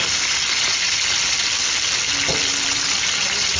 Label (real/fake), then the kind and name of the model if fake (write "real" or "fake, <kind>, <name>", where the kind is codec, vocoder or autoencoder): real